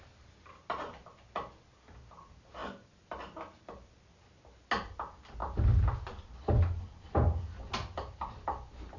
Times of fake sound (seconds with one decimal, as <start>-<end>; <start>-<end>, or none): none